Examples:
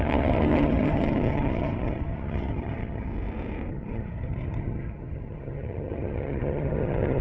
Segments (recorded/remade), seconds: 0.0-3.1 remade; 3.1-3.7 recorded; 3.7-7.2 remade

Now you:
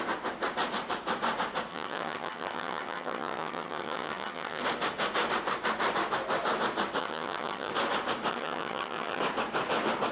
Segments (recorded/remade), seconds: 0.0-1.7 recorded; 1.7-4.6 remade; 4.6-7.0 recorded; 7.0-7.7 remade; 7.7-8.3 recorded; 8.3-9.2 remade; 9.2-10.1 recorded

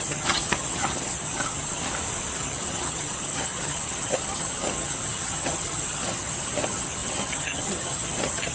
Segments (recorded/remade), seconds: 0.0-1.8 remade; 1.8-2.4 recorded; 2.4-8.5 remade

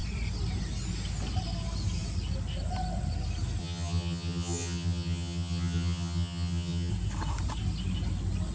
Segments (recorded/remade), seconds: 0.0-3.6 recorded; 3.6-6.9 remade; 6.9-8.5 recorded

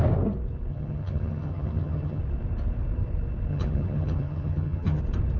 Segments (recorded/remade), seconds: 0.0-0.7 recorded; 0.7-2.2 remade; 2.2-3.5 recorded; 3.5-5.0 remade; 5.0-5.4 recorded